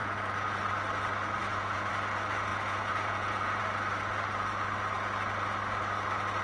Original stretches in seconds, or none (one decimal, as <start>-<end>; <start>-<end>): 0.7-1.4; 1.9-2.5; 3.6-6.4